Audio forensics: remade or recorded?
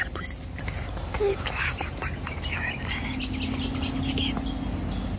recorded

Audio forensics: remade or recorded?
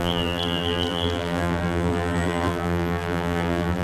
remade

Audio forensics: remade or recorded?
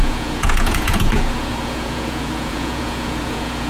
remade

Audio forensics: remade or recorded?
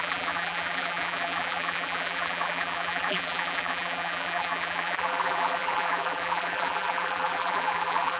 remade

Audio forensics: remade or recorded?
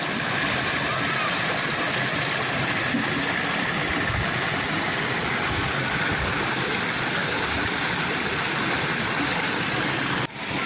recorded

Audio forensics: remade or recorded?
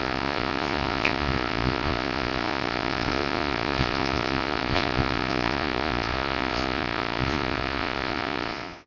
remade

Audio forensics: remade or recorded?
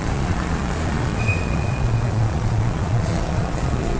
remade